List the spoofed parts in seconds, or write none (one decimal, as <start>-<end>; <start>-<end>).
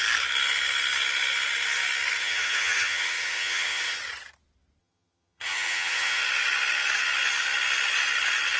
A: 2.2-4.0; 4.8-6.2